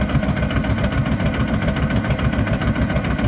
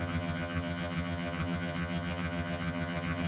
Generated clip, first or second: second